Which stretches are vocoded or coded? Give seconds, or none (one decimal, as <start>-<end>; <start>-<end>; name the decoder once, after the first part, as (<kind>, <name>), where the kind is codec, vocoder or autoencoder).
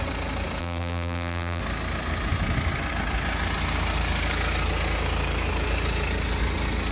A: 0.6-1.6 (vocoder, BigVGAN v2)